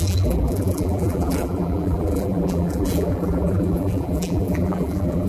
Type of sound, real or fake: fake